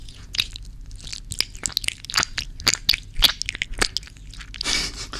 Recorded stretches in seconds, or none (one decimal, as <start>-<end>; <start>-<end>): 0.5-5.2